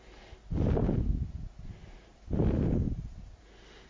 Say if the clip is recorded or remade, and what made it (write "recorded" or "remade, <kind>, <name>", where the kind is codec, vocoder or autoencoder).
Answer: recorded